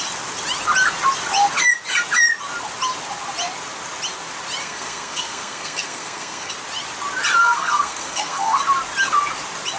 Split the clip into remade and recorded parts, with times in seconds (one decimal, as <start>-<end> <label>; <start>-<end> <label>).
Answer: 0.0-4.6 recorded; 4.6-6.5 remade; 6.5-7.4 recorded; 7.4-8.6 remade; 8.6-9.8 recorded